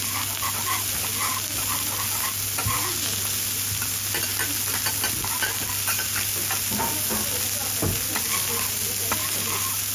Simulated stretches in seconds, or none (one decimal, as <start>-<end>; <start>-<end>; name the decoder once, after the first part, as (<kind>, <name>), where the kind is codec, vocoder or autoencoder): none